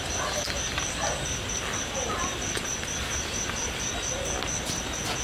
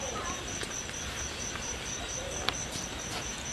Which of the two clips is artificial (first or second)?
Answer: second